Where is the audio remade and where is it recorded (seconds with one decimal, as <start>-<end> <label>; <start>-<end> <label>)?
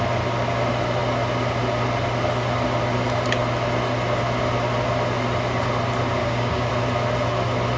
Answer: 0.0-6.2 recorded; 6.2-6.7 remade; 6.7-7.8 recorded